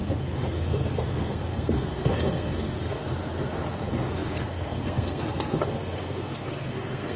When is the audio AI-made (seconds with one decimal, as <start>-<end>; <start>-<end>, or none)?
0.0-3.0; 3.6-7.2